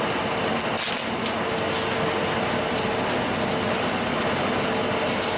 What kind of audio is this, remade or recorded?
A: recorded